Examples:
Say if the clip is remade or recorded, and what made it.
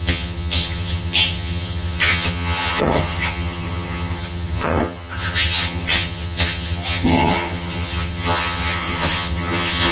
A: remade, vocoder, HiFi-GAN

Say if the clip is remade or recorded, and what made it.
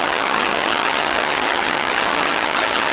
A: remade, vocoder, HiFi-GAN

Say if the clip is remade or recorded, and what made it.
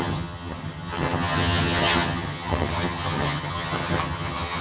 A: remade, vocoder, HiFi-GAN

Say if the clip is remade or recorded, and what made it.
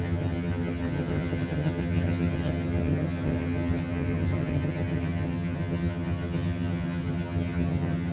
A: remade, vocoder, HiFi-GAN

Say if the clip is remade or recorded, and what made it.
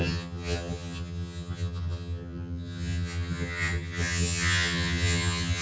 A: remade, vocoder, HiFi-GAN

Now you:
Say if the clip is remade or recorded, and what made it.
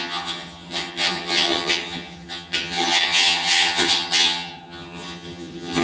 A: remade, vocoder, HiFi-GAN